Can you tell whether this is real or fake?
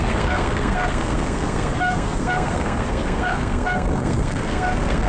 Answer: fake